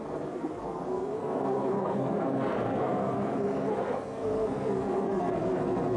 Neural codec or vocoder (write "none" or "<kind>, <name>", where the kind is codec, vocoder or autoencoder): codec, SNAC